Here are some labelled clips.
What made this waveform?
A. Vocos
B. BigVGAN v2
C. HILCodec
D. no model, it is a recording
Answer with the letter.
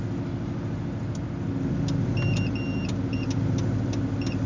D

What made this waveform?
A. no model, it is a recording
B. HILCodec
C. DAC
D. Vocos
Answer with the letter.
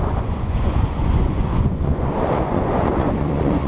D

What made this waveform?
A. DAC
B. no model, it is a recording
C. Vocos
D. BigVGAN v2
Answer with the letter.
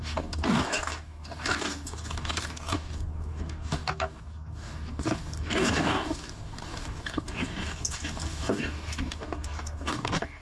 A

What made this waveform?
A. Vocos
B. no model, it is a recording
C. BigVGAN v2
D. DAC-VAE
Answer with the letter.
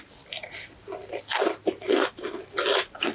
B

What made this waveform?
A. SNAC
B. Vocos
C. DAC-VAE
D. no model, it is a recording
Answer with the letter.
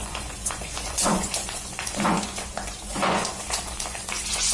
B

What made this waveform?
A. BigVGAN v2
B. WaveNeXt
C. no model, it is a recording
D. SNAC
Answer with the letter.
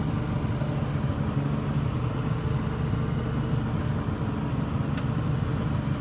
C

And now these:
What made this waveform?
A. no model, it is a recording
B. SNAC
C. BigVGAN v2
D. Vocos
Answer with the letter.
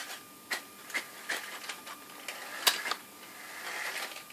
A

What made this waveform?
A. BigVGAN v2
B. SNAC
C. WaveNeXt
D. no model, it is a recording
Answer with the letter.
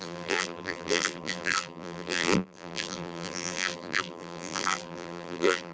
A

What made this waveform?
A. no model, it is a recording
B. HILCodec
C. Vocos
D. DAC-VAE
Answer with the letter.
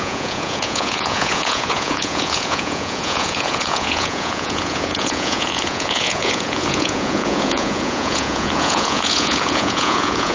C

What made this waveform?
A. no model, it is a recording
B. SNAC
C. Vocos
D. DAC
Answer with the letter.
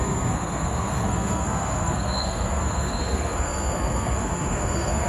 B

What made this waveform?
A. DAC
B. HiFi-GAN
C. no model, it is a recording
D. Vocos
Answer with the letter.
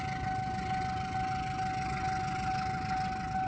C